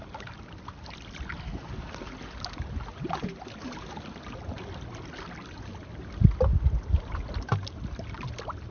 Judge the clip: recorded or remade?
recorded